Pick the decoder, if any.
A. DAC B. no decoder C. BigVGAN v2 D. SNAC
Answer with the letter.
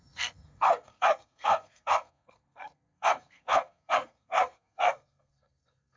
D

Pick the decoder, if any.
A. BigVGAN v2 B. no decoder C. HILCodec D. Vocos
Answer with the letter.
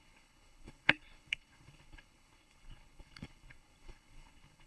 C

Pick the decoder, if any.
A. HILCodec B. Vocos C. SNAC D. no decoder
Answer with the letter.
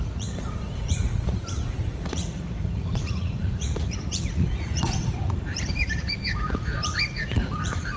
B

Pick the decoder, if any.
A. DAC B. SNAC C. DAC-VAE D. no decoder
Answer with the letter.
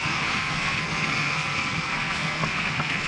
B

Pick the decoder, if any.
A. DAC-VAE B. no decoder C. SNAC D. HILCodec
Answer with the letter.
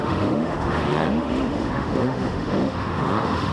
A